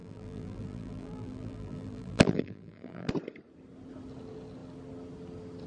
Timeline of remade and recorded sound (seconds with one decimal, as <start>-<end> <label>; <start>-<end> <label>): 0.0-3.1 remade; 3.1-5.7 recorded